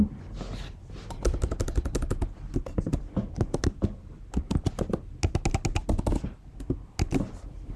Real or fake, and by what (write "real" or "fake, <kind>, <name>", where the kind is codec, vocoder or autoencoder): real